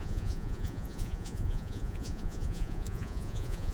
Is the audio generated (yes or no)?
yes